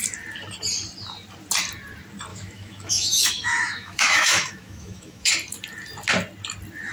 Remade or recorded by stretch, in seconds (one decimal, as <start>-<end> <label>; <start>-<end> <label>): 0.0-2.3 recorded; 2.3-5.3 remade; 5.3-6.9 recorded